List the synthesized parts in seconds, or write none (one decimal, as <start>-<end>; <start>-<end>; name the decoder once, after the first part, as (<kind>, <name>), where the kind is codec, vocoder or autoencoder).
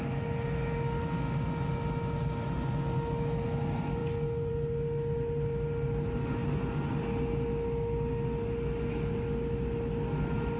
none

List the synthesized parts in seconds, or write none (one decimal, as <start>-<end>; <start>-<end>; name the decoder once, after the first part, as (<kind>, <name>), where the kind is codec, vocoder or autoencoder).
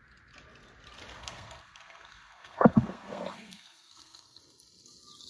1.2-4.4 (codec, SNAC)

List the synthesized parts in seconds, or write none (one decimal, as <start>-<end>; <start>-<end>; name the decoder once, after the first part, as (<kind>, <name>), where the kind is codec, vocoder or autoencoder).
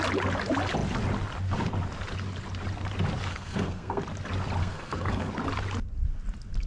3.3-4.0 (codec, SNAC); 4.6-5.3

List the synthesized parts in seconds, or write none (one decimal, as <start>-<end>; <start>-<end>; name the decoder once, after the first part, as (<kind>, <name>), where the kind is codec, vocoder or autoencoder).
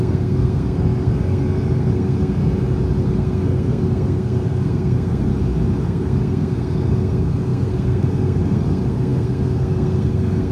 0.0-2.4 (codec, SNAC); 3.0-5.3; 5.8-10.5